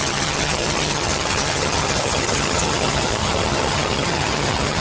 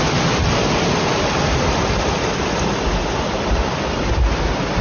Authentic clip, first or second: second